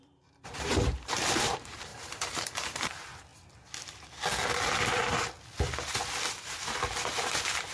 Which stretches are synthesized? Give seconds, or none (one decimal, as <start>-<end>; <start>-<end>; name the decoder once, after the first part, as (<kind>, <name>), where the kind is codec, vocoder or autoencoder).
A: 0.0-3.3 (vocoder, BigVGAN v2); 6.3-7.7